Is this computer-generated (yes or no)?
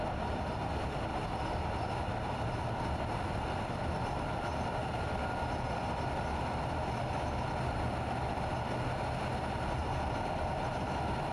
no